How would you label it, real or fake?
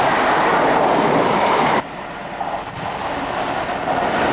real